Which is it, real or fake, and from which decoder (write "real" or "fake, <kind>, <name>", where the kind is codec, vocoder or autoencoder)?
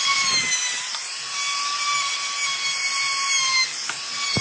real